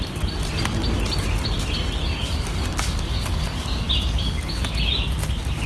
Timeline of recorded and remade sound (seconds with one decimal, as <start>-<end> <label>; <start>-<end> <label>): 0.0-2.0 recorded; 2.0-3.9 remade; 3.9-5.7 recorded